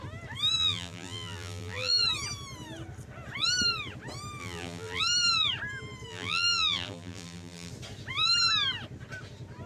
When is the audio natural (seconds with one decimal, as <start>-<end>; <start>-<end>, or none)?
0.0-0.6; 2.0-4.4; 5.0-6.1; 7.7-9.7